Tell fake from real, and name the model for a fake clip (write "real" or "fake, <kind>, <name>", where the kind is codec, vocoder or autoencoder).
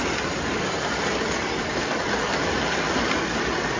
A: fake, vocoder, BigVGAN v2